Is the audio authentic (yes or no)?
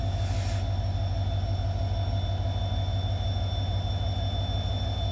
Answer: yes